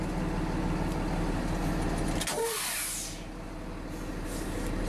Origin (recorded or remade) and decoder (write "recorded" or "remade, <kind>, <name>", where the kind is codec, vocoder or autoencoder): recorded